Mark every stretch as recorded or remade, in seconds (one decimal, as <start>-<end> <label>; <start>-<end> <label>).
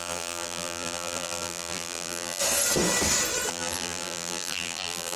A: 0.0-2.4 remade; 2.4-3.5 recorded; 3.5-5.2 remade